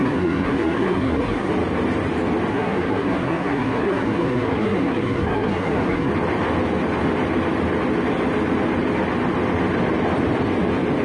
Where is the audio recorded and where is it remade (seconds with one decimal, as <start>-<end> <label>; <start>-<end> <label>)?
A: 0.0-1.5 remade; 1.5-2.5 recorded; 2.5-6.1 remade; 6.1-11.0 recorded